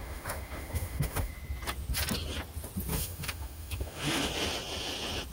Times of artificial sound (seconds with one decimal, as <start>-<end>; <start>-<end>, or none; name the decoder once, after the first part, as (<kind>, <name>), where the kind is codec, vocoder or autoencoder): 0.0-1.3 (autoencoder, DAC-VAE); 2.9-4.3